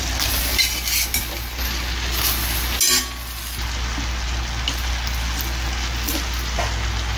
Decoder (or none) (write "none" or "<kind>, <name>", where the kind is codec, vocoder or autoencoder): none